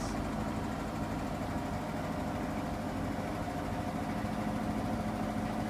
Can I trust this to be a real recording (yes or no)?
yes